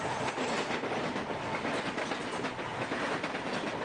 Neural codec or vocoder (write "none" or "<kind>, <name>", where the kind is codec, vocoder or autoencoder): none